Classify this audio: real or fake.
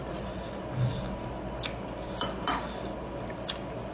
real